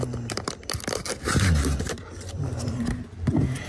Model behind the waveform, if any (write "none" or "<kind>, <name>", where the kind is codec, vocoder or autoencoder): none